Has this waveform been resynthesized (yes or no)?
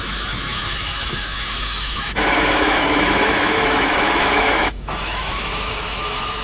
yes